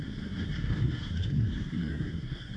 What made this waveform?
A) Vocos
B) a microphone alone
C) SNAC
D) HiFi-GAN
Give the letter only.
C